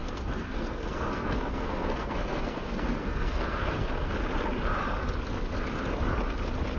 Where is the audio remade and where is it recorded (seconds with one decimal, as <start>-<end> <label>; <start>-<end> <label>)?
0.0-4.1 remade; 4.1-6.8 recorded